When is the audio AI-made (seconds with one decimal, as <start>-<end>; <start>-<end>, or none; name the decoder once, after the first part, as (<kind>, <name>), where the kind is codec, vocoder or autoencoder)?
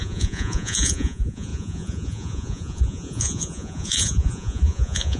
0.0-5.2 (vocoder, Vocos)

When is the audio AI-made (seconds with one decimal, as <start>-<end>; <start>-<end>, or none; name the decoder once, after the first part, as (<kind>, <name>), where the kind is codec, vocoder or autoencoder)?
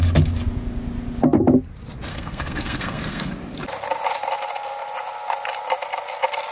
2.1-3.3 (codec, SNAC)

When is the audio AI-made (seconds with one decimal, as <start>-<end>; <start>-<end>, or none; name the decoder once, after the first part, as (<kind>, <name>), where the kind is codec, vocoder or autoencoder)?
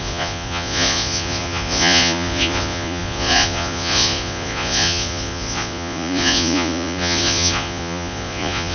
0.0-8.7 (vocoder, Vocos)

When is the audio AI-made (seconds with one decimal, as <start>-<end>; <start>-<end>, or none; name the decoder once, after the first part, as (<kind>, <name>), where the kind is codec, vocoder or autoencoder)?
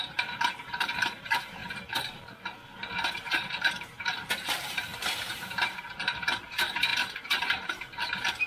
0.0-1.6 (vocoder, BigVGAN v2); 3.1-8.5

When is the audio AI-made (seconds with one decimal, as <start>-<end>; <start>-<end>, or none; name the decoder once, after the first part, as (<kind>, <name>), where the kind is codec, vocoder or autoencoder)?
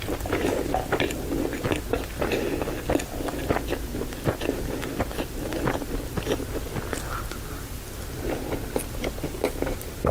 none